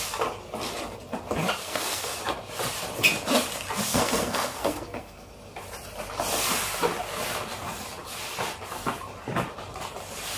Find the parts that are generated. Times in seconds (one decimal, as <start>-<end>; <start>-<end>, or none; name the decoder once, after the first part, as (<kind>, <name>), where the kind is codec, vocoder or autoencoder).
1.6-2.2 (codec, SNAC); 3.9-5.3